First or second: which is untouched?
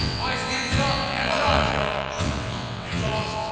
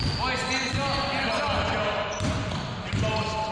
second